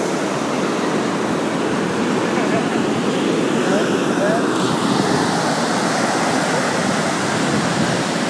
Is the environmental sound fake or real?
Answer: real